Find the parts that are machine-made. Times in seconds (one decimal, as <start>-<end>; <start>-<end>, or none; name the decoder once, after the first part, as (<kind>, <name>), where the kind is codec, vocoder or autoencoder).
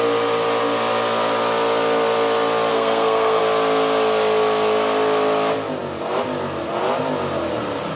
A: 2.7-3.4 (codec, SNAC)